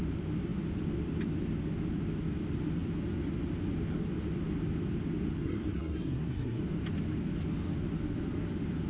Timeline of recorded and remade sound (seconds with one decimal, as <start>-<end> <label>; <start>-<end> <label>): 0.0-5.4 recorded; 5.4-6.6 remade; 6.6-8.9 recorded